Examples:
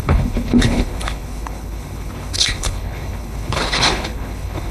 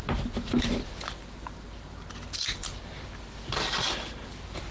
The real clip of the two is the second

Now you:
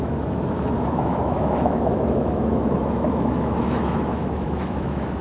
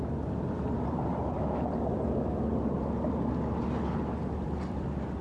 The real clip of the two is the second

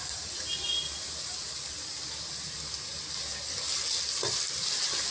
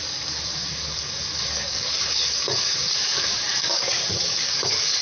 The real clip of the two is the first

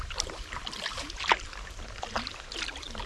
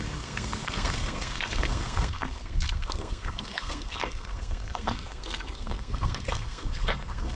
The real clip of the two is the first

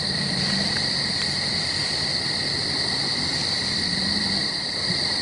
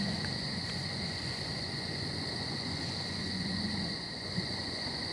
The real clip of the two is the first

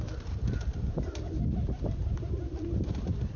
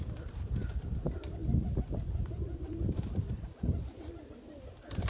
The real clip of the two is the first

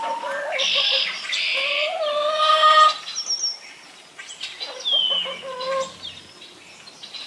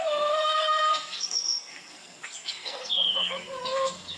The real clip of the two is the first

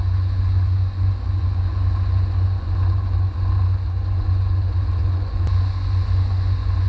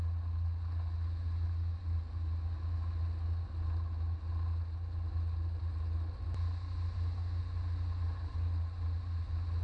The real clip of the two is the second